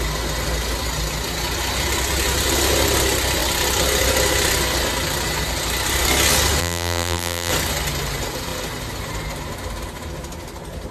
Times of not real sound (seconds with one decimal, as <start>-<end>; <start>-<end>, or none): 6.6-7.5

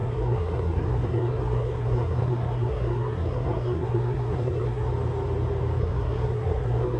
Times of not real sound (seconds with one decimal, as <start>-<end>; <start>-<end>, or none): 0.0-4.9; 5.8-7.0

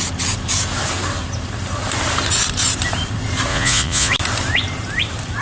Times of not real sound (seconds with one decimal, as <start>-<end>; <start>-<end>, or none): 3.5-4.1